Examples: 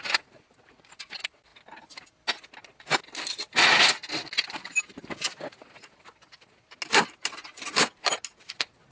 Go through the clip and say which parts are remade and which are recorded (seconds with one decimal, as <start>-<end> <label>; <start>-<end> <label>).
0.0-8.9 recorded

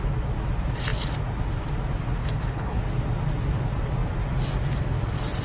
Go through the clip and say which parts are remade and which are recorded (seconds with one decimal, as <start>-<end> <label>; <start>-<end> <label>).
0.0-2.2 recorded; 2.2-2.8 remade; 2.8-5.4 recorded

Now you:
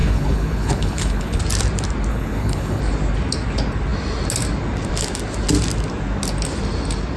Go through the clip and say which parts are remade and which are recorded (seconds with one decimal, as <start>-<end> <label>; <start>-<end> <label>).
0.0-1.4 remade; 1.4-2.1 recorded; 2.1-2.8 remade; 2.8-7.2 recorded

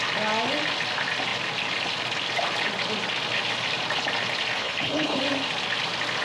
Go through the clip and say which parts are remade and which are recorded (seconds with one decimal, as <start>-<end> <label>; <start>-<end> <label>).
0.0-4.6 recorded; 4.6-5.2 remade; 5.2-6.2 recorded

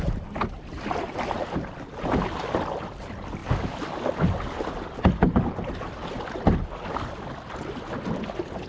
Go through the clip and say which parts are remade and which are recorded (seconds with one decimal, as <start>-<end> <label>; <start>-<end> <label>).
0.0-8.7 recorded

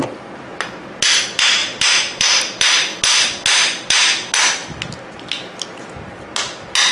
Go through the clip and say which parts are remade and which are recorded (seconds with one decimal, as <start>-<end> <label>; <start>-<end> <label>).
0.0-6.9 recorded